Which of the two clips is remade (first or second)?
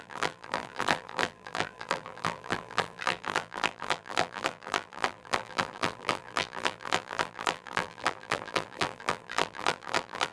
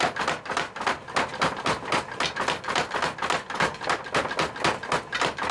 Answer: first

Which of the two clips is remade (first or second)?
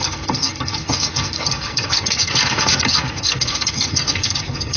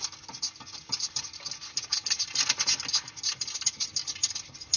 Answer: first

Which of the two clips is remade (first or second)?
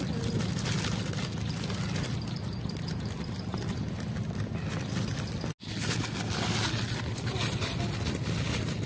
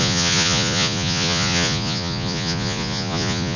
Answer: second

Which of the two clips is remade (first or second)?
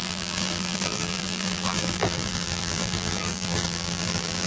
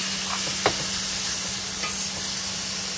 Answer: first